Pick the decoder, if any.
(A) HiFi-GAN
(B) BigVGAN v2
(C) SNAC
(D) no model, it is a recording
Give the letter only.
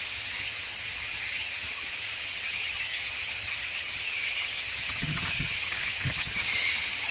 A